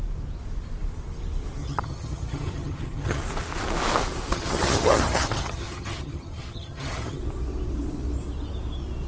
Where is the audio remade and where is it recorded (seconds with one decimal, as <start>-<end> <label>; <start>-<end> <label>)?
0.0-1.6 recorded; 1.6-3.2 remade; 3.2-4.3 recorded; 4.3-7.2 remade; 7.2-9.1 recorded